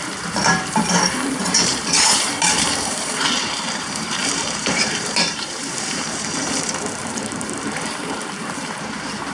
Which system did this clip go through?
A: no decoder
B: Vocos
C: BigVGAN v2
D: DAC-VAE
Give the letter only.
C